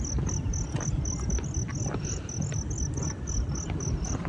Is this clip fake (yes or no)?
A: no